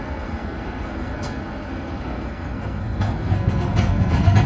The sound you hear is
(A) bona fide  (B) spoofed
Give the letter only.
B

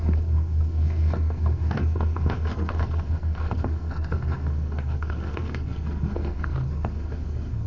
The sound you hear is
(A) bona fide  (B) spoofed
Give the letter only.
B